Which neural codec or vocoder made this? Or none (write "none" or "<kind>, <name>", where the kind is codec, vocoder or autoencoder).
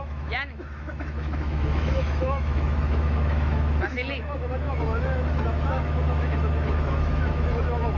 autoencoder, DAC-VAE